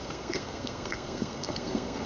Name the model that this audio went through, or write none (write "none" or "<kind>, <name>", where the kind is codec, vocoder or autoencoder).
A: codec, SNAC